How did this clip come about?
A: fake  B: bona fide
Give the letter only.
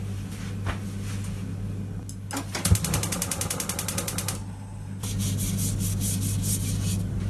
B